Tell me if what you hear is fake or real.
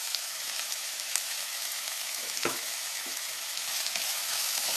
fake